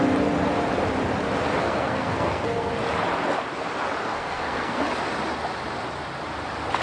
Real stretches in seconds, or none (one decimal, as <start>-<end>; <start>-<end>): 0.0-1.6; 2.7-4.0; 4.8-6.8